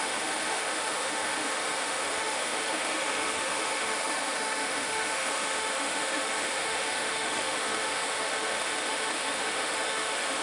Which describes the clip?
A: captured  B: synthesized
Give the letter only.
B